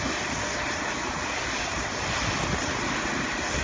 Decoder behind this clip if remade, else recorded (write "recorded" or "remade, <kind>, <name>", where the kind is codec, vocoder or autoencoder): recorded